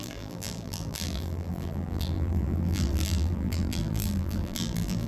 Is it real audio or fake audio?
fake